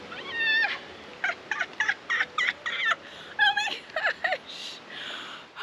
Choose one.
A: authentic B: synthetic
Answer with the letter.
A